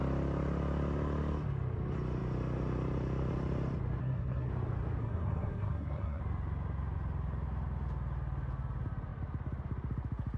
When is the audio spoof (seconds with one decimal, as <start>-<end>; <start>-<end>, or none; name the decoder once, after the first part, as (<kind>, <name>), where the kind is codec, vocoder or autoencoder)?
4.0-4.5 (codec, SNAC); 5.0-6.2